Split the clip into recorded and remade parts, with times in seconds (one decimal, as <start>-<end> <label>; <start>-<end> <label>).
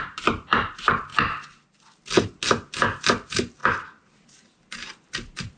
0.0-1.1 remade; 1.1-3.1 recorded; 3.1-3.6 remade; 3.6-5.6 recorded